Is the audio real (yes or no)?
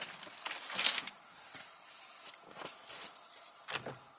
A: no